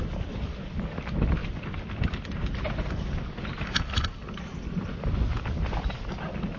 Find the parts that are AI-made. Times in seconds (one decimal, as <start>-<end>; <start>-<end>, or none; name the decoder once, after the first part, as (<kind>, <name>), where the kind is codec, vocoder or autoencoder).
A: none

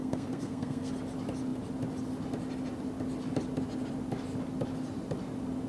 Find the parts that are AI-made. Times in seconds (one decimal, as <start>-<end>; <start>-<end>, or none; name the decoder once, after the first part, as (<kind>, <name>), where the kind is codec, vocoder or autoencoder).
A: 0.0-0.9 (codec, SNAC)

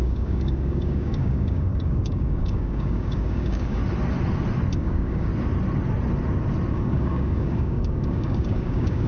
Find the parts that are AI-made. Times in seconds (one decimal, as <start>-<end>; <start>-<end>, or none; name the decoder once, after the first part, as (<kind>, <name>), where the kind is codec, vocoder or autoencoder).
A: 0.0-3.8 (codec, DAC); 4.8-5.3; 6.7-9.1

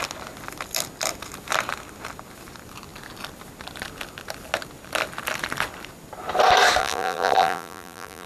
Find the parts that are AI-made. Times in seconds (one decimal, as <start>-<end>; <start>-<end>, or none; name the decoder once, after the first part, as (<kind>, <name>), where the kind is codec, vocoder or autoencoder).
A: 6.8-8.3 (vocoder, BigVGAN v2)